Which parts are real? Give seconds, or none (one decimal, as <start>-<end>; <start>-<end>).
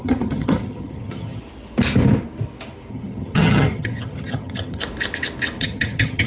1.4-2.9; 4.8-5.6